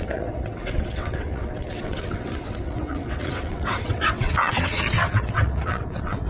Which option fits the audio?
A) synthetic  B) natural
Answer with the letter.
A